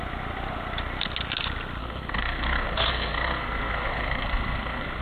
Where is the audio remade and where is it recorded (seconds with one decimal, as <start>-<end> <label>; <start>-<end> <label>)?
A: 0.0-1.8 recorded; 1.8-5.0 remade